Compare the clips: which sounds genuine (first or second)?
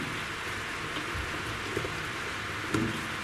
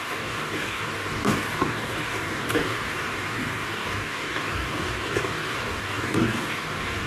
first